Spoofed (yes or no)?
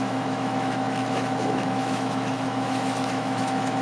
yes